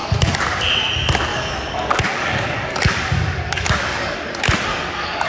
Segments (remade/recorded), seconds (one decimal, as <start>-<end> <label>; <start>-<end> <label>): 0.0-1.3 recorded; 1.3-4.3 remade; 4.3-4.7 recorded; 4.7-5.3 remade